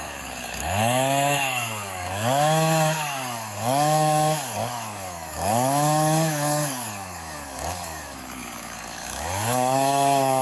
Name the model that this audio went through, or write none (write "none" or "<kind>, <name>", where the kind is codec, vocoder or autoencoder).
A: codec, DAC